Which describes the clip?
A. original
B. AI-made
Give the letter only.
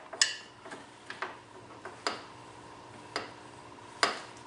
A